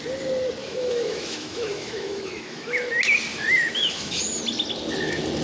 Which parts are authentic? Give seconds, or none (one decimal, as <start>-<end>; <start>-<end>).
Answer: 0.0-0.6; 2.9-3.3; 4.2-5.4